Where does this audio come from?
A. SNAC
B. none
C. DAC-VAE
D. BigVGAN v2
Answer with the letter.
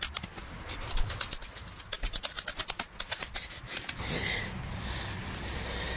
B